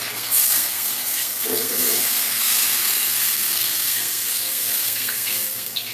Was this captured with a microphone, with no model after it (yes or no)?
no